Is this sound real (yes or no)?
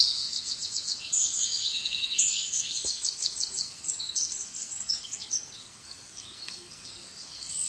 no